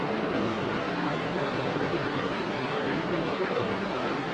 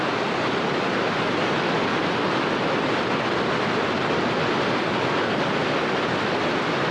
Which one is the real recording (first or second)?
second